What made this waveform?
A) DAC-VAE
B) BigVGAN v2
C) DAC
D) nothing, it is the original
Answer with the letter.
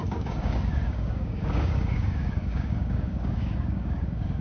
C